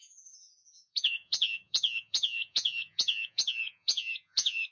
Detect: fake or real fake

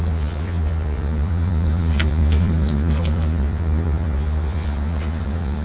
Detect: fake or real fake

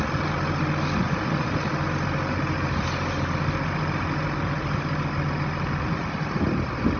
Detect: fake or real real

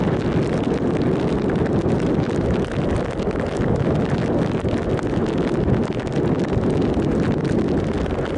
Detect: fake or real real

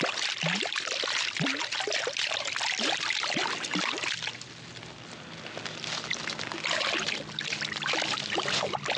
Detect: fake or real real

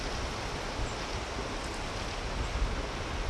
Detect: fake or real real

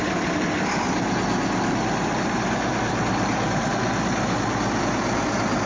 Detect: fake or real real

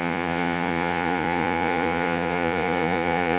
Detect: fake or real fake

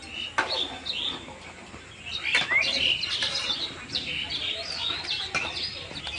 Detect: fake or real real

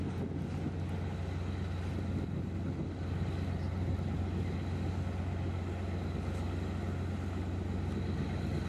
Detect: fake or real real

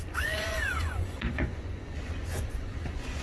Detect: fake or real fake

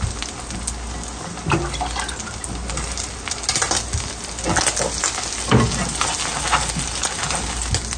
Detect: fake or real real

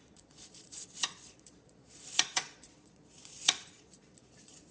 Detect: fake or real fake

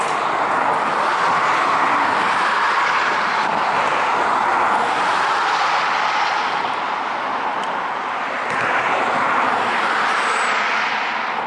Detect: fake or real real